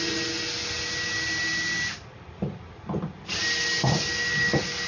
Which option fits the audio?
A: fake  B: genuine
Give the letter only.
B